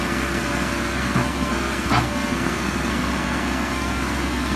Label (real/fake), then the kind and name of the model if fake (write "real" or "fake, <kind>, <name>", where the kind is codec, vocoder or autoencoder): fake, codec, SNAC